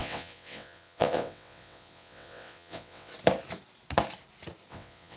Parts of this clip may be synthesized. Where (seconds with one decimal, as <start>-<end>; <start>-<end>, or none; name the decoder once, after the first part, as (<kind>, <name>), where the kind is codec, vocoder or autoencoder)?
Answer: 0.0-3.1 (vocoder, WaveNeXt); 4.7-5.2